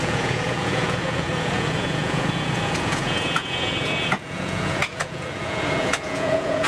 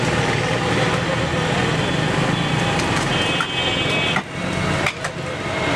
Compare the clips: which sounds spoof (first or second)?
first